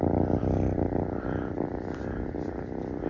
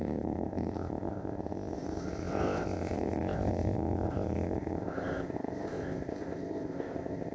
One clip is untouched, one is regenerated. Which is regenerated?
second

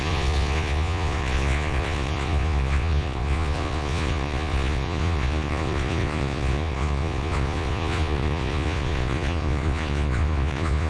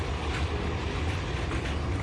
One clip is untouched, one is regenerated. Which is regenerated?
first